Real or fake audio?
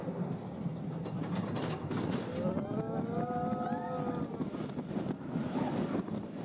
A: real